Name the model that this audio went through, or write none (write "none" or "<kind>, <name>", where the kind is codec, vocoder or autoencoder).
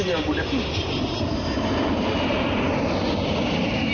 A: none